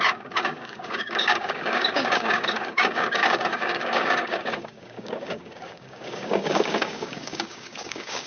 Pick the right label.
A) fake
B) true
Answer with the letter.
A